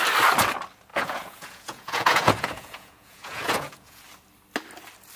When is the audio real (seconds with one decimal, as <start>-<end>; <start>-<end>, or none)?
0.0-0.9; 4.0-5.2